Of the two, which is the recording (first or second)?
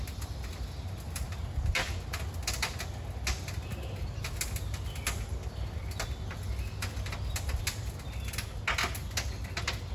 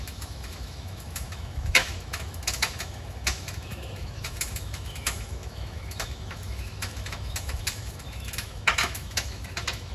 first